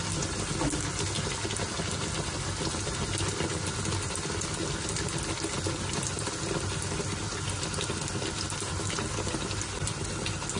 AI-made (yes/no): no